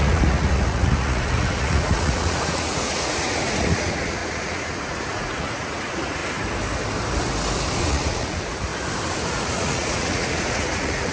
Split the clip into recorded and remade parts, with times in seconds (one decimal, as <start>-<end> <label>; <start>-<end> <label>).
0.0-6.2 remade; 6.2-7.8 recorded; 7.8-8.7 remade; 8.7-9.3 recorded; 9.3-11.1 remade